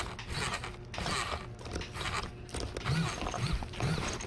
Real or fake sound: real